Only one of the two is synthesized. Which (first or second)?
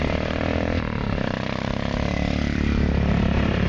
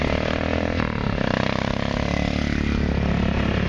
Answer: first